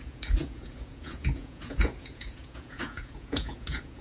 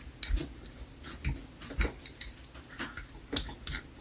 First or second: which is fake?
first